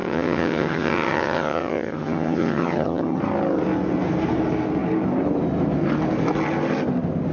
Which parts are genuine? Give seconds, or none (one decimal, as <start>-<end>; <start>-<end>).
3.2-7.3